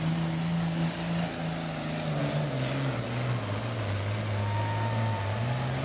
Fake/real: real